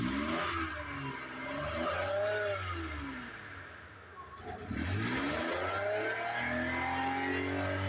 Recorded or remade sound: recorded